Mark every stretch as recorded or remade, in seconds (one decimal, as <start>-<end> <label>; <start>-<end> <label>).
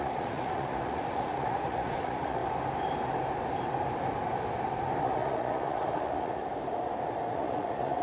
0.0-2.4 remade; 2.4-5.0 recorded; 5.0-6.4 remade; 6.4-7.3 recorded; 7.3-8.0 remade